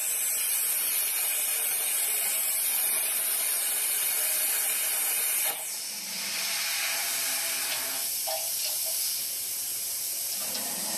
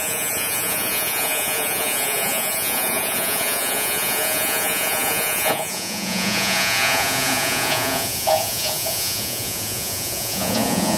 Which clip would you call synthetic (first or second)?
second